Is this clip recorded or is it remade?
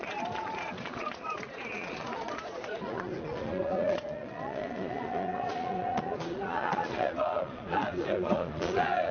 remade